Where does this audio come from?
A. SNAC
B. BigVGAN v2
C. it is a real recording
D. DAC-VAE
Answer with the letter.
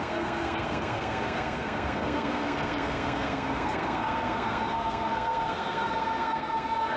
A